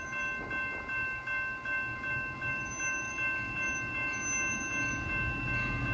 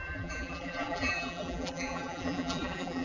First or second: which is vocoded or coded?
second